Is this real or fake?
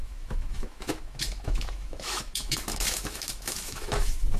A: fake